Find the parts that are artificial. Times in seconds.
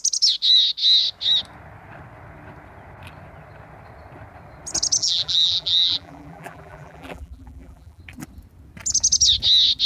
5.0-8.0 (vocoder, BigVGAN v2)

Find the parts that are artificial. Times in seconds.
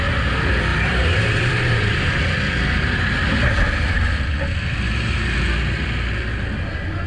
0.7-2.2 (vocoder, BigVGAN v2)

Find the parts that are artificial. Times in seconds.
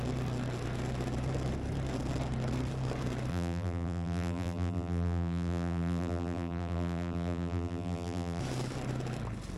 3.3-8.4 (vocoder, BigVGAN v2)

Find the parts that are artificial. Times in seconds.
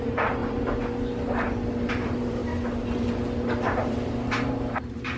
0.0-0.4 (vocoder, BigVGAN v2); 1.9-2.4; 3.8-5.2